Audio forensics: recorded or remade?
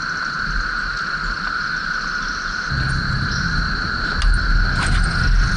recorded